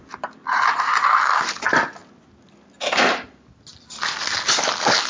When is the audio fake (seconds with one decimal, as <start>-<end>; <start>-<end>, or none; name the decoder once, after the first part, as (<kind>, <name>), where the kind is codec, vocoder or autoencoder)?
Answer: none